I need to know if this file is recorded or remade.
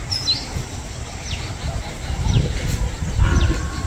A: recorded